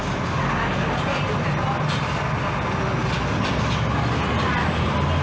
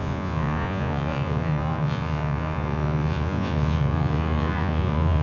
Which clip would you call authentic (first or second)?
first